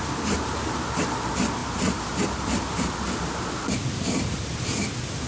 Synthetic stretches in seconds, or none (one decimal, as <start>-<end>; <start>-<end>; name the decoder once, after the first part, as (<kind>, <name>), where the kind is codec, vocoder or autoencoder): 1.6-3.0 (vocoder, BigVGAN v2)